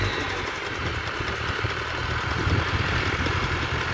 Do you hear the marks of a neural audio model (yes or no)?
yes